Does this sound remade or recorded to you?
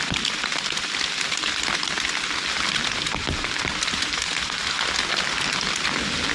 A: recorded